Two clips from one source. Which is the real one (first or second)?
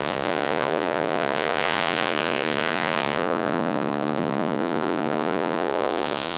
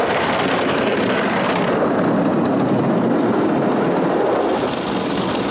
second